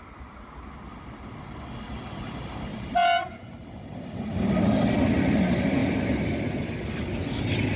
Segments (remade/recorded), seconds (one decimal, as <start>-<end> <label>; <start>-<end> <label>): 0.0-2.7 recorded; 2.7-3.8 remade; 3.8-7.8 recorded